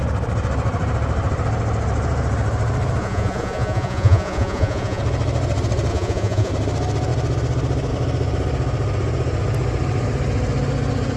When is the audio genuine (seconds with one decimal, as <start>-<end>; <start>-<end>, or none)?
0.0-3.0; 5.0-5.9; 6.5-11.2